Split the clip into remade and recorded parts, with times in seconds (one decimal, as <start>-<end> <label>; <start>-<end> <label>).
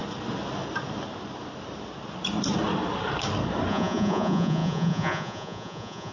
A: 0.0-3.7 recorded; 3.7-6.1 remade